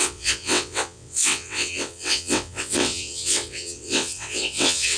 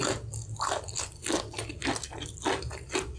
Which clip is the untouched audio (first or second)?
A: second